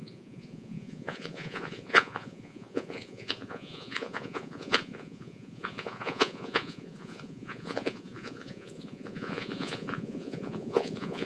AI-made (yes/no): yes